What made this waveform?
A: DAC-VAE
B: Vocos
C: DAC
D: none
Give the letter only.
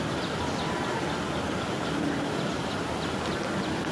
D